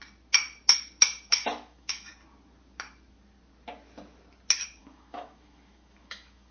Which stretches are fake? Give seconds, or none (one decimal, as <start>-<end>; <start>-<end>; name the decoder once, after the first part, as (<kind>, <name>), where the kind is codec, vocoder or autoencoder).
1.3-2.1 (autoencoder, DAC-VAE); 4.8-6.5